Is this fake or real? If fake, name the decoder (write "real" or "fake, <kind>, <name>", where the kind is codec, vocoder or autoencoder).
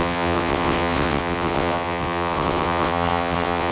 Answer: fake, vocoder, WaveNeXt